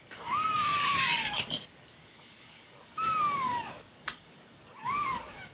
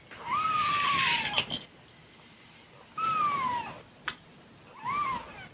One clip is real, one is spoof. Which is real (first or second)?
second